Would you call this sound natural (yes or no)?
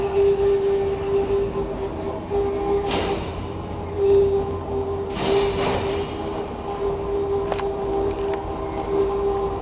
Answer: yes